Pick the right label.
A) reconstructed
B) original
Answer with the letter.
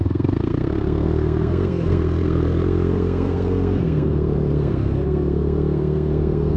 A